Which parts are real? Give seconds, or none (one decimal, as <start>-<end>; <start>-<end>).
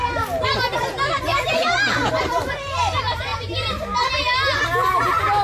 0.0-1.3; 2.3-3.3; 4.1-5.4